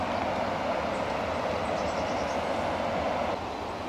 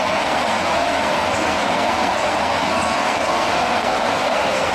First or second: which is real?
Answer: first